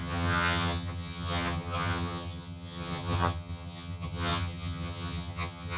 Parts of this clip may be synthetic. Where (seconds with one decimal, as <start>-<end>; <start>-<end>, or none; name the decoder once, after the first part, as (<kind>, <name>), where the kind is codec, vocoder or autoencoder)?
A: 0.0-5.8 (vocoder, HiFi-GAN)